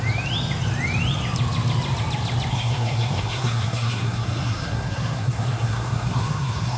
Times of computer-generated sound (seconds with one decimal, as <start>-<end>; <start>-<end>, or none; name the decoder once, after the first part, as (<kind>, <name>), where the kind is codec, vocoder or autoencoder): 2.5-6.8 (codec, SNAC)